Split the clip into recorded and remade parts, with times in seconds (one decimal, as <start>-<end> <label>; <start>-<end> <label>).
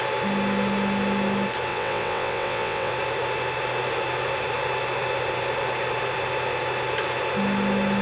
0.0-1.7 recorded; 1.7-2.9 remade; 2.9-8.0 recorded